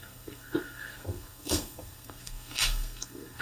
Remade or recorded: remade